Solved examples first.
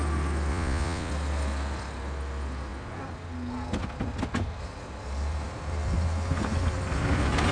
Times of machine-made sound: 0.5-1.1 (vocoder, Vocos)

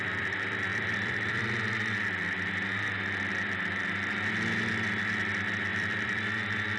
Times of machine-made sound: 0.7-1.5 (vocoder, BigVGAN v2); 5.7-6.2